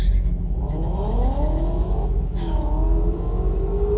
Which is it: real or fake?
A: fake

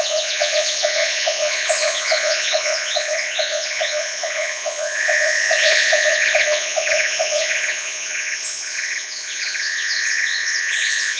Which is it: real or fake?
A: fake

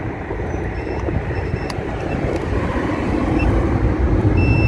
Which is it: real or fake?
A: fake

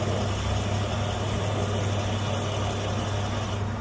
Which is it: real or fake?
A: real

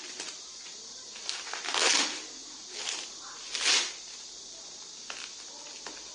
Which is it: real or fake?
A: real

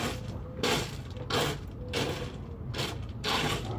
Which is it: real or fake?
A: fake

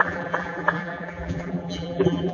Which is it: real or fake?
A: fake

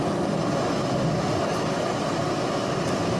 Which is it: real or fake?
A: real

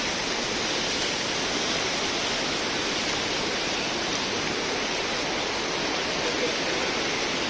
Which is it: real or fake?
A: real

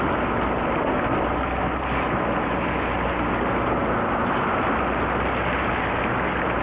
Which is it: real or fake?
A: real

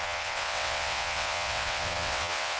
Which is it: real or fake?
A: fake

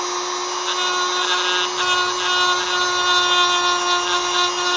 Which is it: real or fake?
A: real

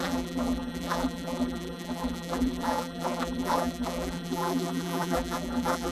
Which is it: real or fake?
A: fake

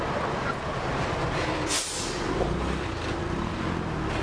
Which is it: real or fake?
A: real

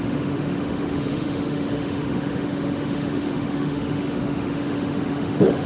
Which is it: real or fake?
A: fake